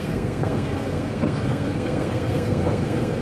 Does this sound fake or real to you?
fake